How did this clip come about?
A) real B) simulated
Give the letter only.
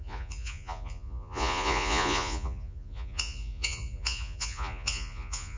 B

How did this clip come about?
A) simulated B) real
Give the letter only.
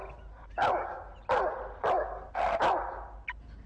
B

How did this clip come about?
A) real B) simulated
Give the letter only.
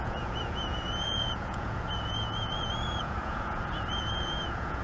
B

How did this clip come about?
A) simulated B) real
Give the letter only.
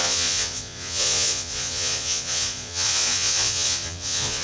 A